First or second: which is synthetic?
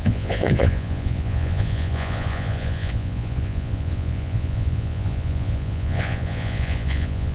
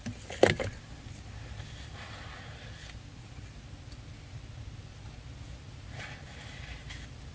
first